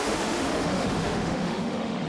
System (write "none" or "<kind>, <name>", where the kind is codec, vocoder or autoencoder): autoencoder, DAC-VAE